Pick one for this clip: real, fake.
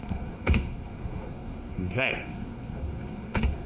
fake